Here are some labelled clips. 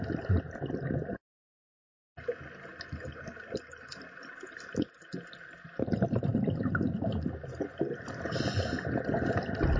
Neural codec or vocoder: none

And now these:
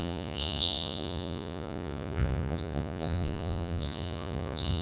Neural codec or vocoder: vocoder, Vocos